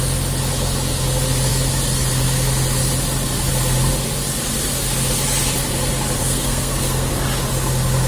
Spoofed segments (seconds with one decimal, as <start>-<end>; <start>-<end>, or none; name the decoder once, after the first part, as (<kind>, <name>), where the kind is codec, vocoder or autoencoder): 6.2-7.1 (codec, SNAC)